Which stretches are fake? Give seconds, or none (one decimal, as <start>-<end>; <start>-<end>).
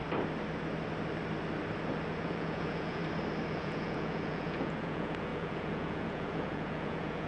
2.2-3.0; 3.5-7.3